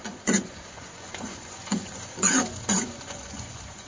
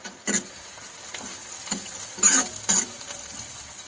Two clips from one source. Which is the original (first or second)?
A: second